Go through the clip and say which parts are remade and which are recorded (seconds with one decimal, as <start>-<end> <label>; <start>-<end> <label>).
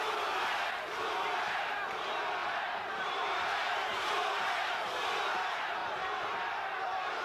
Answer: 0.0-2.4 recorded; 2.4-4.4 remade; 4.4-5.8 recorded; 5.8-7.2 remade